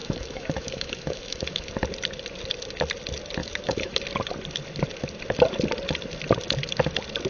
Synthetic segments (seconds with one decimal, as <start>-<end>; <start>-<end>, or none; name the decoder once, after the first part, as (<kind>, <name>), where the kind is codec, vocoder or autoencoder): 0.0-1.7 (autoencoder, DAC-VAE); 3.4-4.0